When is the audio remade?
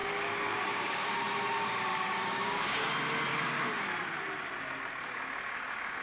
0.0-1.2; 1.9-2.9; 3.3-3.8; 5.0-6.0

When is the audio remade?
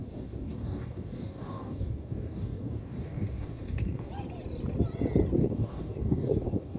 0.0-4.1; 5.4-6.8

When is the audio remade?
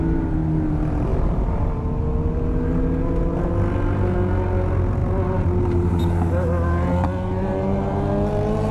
none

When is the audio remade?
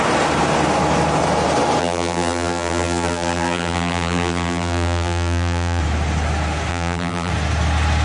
1.8-5.8; 6.7-7.3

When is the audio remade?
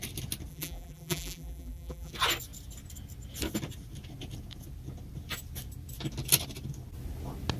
0.5-2.1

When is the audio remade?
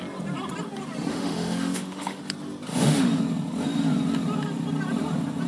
1.1-2.2; 2.7-3.2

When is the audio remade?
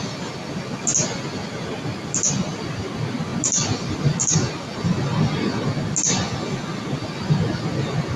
none